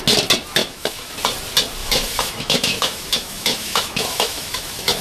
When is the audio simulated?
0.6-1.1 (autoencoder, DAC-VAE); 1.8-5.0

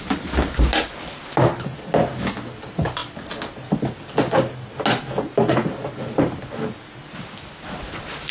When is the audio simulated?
none

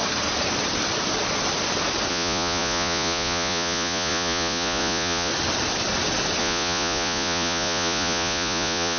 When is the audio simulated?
2.1-5.3 (vocoder, Vocos); 6.4-9.0

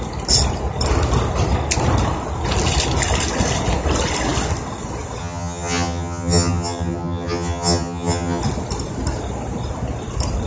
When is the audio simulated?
5.2-8.4 (vocoder, HiFi-GAN)

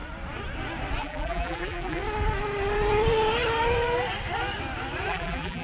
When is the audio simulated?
1.0-2.0 (vocoder, BigVGAN v2); 5.1-5.6

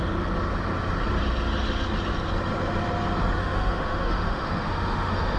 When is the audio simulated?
3.4-5.4 (autoencoder, DAC-VAE)